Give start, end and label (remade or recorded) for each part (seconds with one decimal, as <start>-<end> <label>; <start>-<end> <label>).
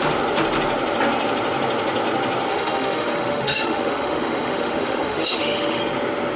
0.0-2.5 recorded; 2.5-5.8 remade; 5.8-6.4 recorded